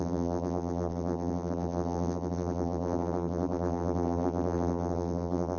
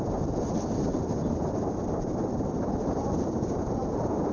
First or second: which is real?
second